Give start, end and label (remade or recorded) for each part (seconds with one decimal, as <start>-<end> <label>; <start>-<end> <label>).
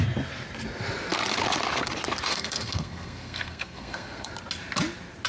0.0-2.3 recorded; 2.3-4.3 remade; 4.3-5.3 recorded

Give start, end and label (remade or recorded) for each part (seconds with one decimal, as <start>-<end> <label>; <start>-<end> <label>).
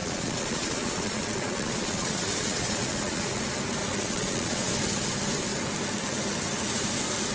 0.0-3.4 remade; 3.4-3.8 recorded; 3.8-4.7 remade; 4.7-7.3 recorded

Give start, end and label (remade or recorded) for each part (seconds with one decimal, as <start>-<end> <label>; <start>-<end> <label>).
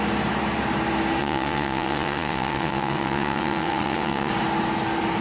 0.0-1.2 recorded; 1.2-4.3 remade; 4.3-5.2 recorded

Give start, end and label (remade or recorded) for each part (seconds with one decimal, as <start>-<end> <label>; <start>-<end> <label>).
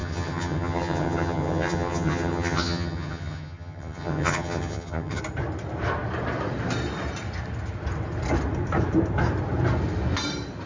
0.0-5.2 remade; 5.2-10.7 recorded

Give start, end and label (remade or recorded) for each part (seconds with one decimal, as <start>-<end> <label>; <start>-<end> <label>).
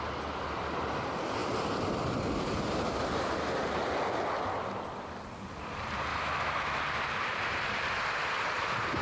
0.0-6.1 recorded; 6.1-6.8 remade; 6.8-9.0 recorded